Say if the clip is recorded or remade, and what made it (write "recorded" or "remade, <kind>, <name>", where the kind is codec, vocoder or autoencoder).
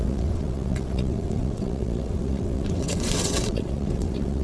remade, vocoder, WaveNeXt